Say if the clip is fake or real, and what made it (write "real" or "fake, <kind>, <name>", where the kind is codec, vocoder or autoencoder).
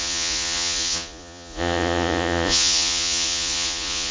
fake, vocoder, Vocos